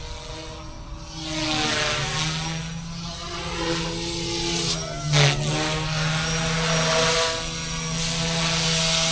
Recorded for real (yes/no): yes